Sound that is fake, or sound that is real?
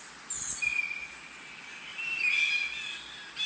real